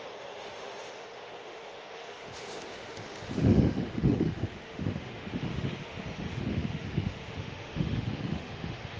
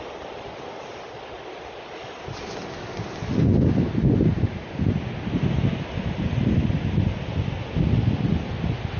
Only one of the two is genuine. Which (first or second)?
second